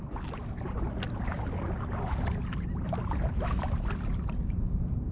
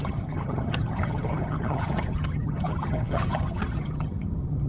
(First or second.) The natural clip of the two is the first